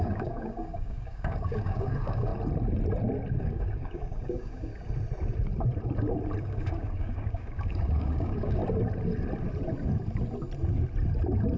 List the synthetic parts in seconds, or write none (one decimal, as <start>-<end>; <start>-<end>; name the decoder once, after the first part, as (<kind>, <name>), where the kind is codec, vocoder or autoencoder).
0.0-2.3 (codec, DAC); 3.4-4.7; 6.4-8.6